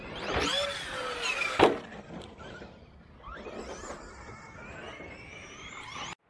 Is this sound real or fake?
real